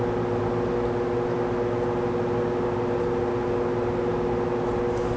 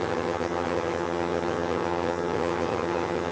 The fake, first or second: second